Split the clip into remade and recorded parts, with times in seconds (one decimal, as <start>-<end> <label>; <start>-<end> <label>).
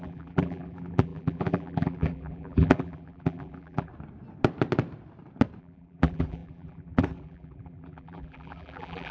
0.0-3.9 remade; 3.9-5.6 recorded; 5.6-9.1 remade